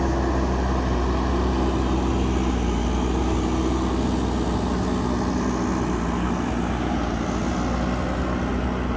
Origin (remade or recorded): recorded